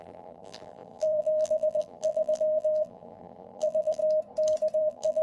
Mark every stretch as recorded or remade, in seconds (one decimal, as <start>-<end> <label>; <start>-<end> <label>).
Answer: 0.0-4.0 remade; 4.0-4.8 recorded; 4.8-5.2 remade